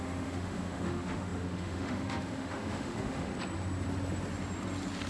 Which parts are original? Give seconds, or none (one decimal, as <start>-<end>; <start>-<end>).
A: 3.3-5.1